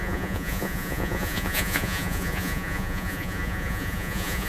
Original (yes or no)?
no